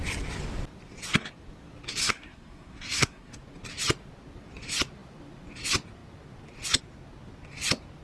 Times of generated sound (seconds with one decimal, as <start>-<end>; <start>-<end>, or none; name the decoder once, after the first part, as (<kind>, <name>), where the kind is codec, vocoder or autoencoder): 2.0-3.4 (codec, SNAC)